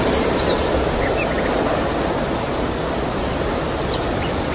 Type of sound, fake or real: real